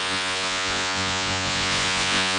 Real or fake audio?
fake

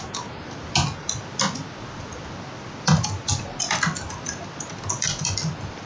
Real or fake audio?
real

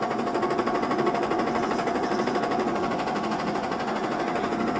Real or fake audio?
fake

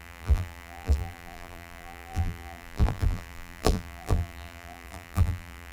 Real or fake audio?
fake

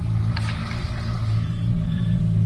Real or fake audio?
real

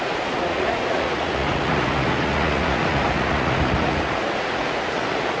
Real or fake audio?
fake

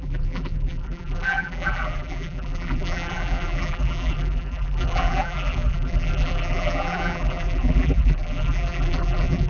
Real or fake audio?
fake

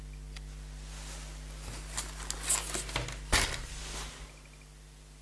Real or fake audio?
real